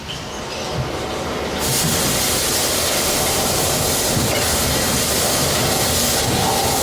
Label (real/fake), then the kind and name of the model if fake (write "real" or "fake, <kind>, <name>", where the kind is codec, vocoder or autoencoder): real